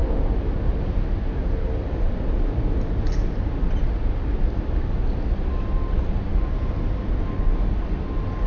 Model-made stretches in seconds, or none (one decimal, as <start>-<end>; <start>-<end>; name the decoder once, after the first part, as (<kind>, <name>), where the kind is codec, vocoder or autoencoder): none